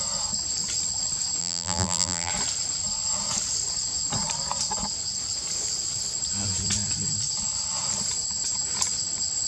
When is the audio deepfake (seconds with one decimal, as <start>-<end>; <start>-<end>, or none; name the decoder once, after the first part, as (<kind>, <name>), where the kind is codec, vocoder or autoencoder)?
1.4-2.3 (vocoder, BigVGAN v2)